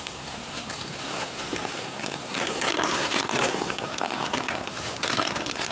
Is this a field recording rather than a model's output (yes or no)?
no